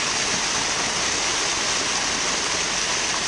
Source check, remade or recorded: recorded